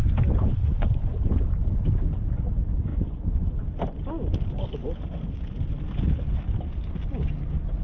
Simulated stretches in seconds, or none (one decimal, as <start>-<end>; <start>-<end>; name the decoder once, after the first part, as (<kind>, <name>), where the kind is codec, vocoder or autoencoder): 0.4-1.3 (vocoder, Vocos); 2.9-3.5